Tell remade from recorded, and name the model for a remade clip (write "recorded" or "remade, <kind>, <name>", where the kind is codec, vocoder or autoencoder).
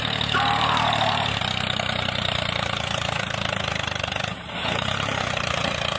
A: remade, vocoder, BigVGAN v2